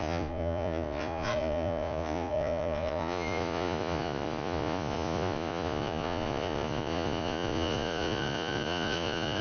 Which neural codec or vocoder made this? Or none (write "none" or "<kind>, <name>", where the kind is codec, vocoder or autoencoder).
vocoder, Vocos